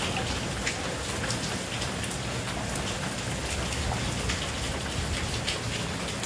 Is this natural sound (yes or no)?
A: yes